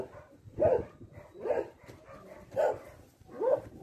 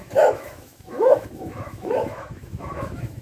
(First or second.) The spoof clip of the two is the second